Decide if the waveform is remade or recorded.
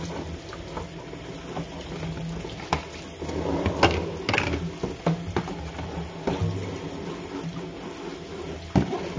recorded